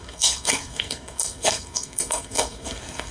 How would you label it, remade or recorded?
remade